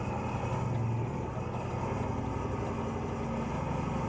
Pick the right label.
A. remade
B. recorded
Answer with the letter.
B